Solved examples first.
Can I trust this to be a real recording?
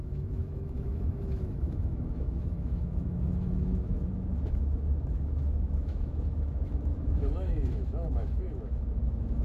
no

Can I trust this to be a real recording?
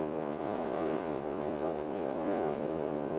no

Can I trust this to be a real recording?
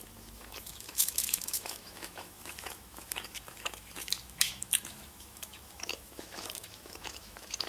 no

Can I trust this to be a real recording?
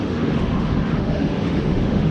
no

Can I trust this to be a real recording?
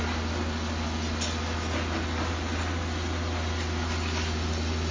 yes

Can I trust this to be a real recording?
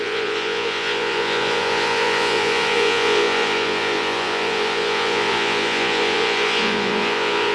no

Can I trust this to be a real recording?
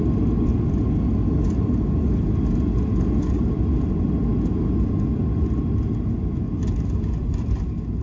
yes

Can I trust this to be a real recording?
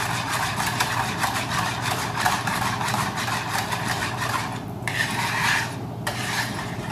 yes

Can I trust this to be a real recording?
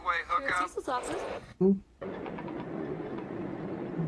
no